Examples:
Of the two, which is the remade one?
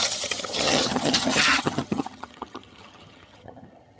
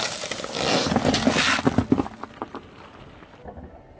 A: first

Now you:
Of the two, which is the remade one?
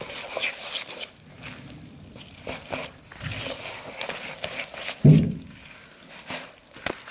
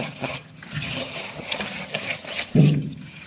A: second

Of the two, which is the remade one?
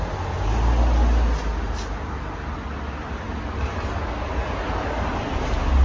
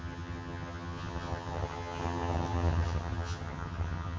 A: second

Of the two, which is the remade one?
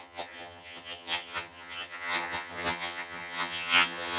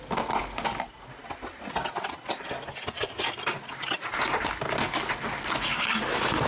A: first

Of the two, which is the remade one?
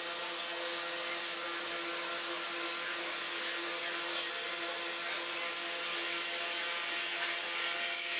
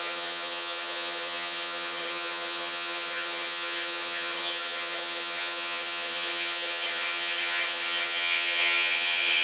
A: second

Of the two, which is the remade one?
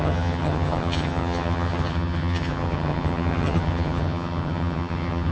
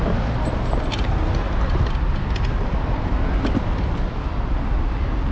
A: first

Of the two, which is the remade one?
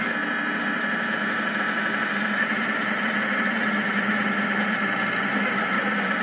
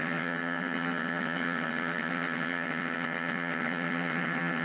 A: second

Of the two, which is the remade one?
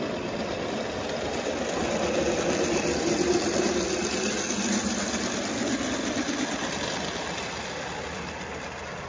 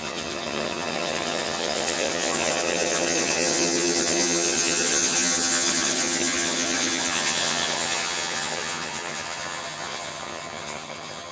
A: second